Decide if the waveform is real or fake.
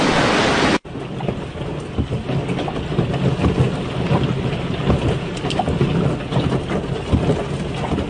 real